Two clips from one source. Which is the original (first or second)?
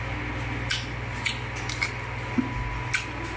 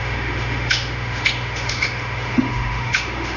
first